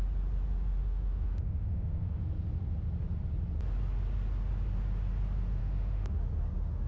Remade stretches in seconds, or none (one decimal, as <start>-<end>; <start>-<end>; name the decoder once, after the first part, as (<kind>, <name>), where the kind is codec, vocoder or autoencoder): 0.8-2.2 (autoencoder, DAC-VAE); 5.6-6.2